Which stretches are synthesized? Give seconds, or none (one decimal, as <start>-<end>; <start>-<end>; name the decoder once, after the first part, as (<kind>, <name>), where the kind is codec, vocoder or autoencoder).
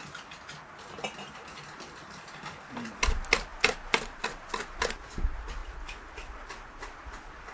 2.0-2.9 (vocoder, BigVGAN v2)